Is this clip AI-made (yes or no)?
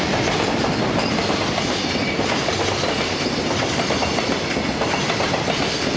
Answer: no